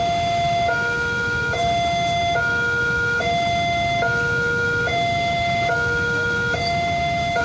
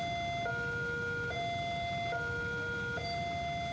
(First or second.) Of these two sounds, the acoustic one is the second